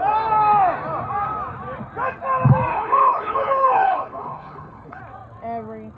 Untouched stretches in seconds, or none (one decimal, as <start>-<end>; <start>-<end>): 0.0-2.7; 5.0-6.0